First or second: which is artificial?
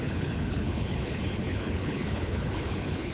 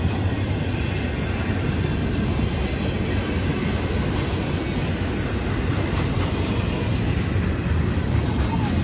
first